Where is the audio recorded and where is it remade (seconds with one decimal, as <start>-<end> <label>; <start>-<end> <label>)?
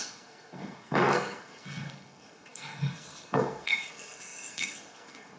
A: 0.0-5.4 remade